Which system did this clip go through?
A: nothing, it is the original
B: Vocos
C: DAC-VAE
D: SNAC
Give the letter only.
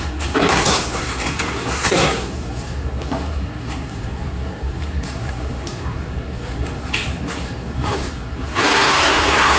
D